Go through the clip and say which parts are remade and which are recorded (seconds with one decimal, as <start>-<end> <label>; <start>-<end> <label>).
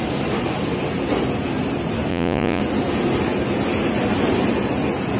0.0-2.1 recorded; 2.1-2.6 remade; 2.6-5.2 recorded